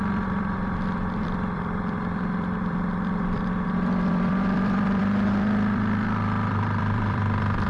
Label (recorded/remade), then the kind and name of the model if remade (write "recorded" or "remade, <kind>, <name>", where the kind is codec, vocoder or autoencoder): remade, vocoder, BigVGAN v2